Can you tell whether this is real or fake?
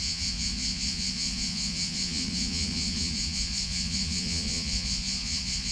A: fake